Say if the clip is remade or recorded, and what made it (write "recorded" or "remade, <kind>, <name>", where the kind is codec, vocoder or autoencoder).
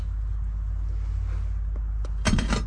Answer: recorded